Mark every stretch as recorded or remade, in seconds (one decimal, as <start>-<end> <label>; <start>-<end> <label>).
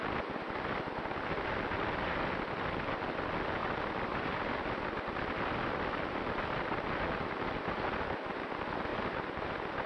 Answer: 0.0-3.6 recorded; 3.6-4.4 remade; 4.4-8.9 recorded; 8.9-9.5 remade; 9.5-9.9 recorded